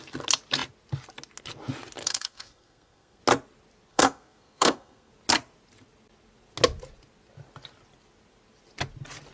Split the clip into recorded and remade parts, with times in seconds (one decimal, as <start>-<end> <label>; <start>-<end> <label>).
0.0-2.0 recorded; 2.0-3.2 remade; 3.2-3.9 recorded; 3.9-5.1 remade; 5.1-9.3 recorded